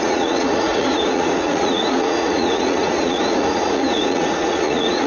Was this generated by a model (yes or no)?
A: yes